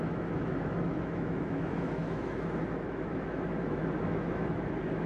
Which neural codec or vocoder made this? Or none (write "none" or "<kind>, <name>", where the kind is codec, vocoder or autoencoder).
autoencoder, DAC-VAE